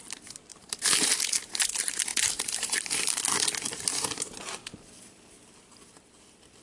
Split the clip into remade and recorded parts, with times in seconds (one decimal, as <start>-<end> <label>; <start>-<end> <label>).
0.0-0.5 recorded; 0.5-1.3 remade; 1.3-2.1 recorded; 2.1-3.2 remade; 3.2-3.6 recorded; 3.6-4.4 remade; 4.4-6.6 recorded